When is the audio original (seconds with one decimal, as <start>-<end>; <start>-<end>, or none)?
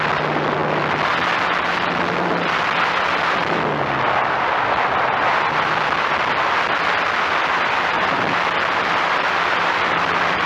0.0-10.5